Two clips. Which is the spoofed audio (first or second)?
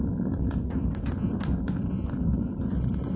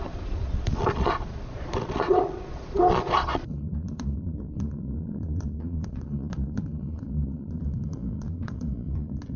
second